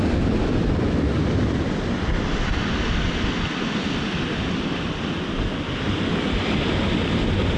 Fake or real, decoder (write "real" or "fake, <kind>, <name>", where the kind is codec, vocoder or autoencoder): real